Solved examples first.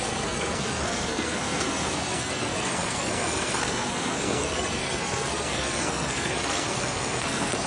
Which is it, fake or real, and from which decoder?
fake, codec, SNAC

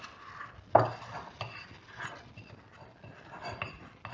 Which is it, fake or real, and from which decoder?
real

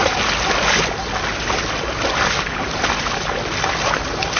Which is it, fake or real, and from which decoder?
real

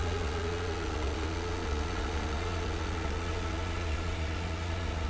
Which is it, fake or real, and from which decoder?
fake, vocoder, Vocos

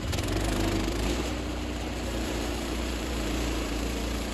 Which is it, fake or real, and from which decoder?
fake, vocoder, BigVGAN v2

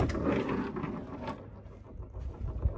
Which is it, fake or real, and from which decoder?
real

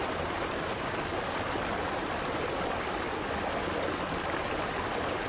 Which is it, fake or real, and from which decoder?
real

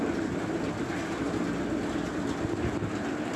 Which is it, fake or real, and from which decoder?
real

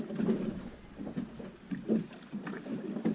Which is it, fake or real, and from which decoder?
real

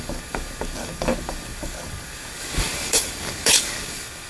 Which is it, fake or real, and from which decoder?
fake, codec, DAC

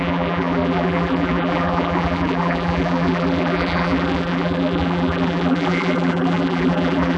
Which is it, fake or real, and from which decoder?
fake, vocoder, BigVGAN v2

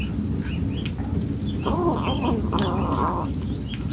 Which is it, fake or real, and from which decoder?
real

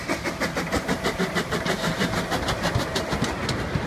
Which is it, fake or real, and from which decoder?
real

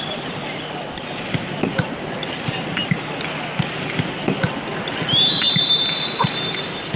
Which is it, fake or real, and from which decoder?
real